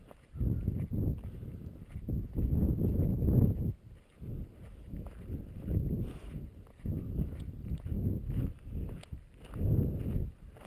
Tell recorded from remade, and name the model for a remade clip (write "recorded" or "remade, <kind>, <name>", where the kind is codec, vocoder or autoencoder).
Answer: recorded